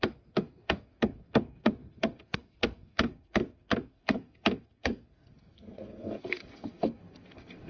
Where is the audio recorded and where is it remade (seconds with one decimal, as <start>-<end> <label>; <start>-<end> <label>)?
0.0-7.7 remade